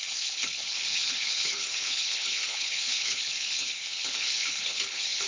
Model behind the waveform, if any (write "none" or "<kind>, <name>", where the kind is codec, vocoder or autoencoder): codec, HILCodec